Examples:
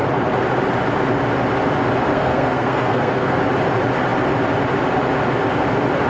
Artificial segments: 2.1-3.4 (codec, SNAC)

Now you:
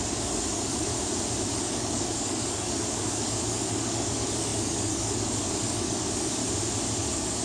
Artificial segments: 0.0-0.9 (codec, DAC); 1.5-6.4; 7.0-7.4

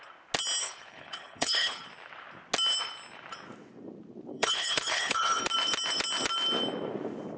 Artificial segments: 0.6-1.8 (codec, HILCodec); 4.3-5.4

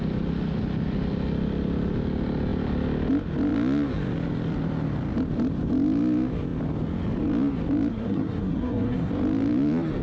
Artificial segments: 7.9-9.1 (codec, SNAC)

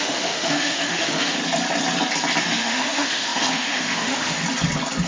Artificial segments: 0.0-1.4 (autoencoder, DAC-VAE); 2.4-4.4